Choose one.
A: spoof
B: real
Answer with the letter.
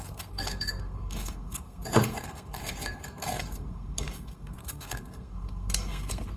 A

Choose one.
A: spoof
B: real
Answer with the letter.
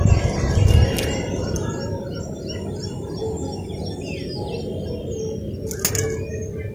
B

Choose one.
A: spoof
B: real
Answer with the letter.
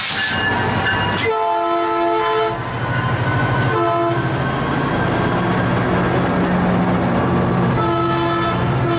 B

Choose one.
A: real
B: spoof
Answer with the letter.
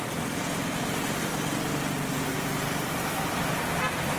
A